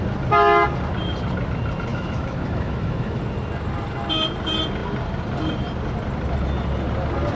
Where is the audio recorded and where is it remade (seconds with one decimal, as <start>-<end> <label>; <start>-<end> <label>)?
0.0-1.9 recorded; 1.9-3.2 remade; 3.2-7.3 recorded